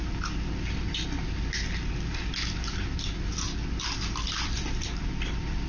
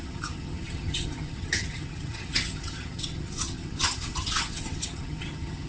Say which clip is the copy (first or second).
second